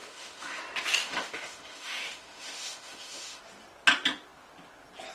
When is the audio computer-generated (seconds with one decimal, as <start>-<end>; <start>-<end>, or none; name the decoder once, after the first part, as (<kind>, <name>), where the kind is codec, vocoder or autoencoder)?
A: 0.0-0.6 (autoencoder, DAC-VAE); 1.0-3.4